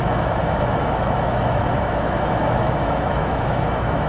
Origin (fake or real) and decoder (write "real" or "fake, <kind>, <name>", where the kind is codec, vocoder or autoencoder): fake, autoencoder, DAC-VAE